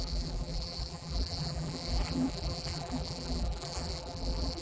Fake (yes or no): yes